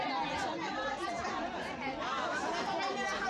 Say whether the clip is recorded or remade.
remade